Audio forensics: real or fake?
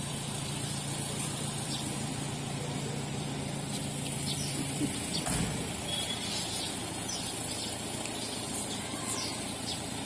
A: real